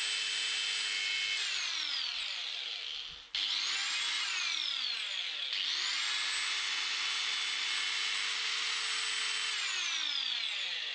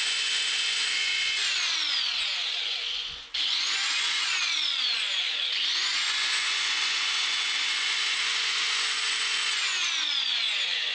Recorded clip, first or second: first